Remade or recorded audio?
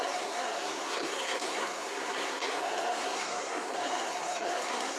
remade